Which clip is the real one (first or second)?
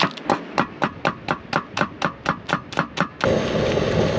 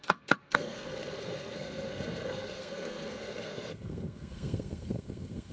first